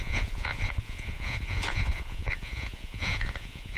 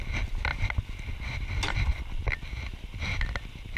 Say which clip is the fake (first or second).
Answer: first